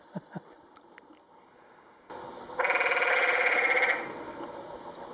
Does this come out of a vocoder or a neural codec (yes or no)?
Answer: no